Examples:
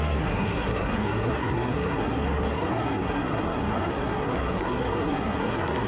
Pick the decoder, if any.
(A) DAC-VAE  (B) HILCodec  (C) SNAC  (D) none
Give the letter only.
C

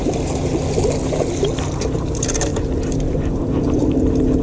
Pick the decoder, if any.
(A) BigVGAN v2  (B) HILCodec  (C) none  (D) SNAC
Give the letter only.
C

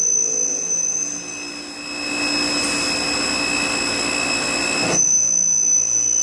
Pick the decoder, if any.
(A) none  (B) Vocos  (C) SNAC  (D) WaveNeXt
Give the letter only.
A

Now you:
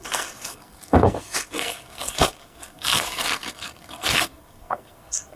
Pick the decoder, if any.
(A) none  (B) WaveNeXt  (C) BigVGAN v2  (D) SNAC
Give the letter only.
D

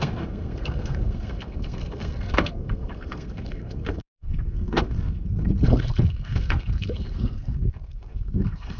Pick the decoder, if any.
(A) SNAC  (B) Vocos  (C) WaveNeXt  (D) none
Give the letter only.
A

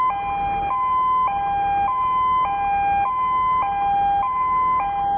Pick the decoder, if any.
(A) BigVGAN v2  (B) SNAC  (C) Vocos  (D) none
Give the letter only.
D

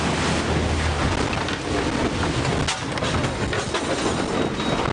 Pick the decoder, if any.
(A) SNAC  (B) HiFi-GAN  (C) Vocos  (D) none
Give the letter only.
D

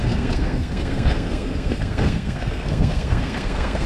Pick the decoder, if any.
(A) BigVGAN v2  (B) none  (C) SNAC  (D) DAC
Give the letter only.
C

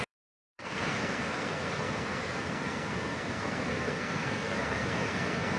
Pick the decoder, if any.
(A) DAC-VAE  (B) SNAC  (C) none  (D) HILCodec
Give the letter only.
B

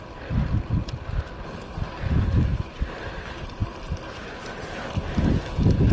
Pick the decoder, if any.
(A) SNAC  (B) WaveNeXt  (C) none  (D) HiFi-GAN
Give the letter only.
C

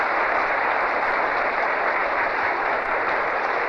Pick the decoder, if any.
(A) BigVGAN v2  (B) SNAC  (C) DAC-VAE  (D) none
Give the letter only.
D